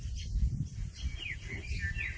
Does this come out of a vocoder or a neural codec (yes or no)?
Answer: no